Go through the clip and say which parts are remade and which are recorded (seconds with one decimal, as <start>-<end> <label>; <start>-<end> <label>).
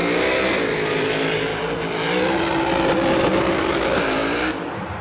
0.0-4.2 recorded; 4.2-5.0 remade